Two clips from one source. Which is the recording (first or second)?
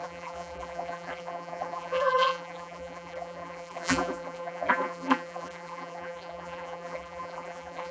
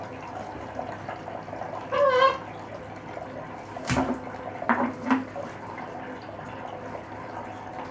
second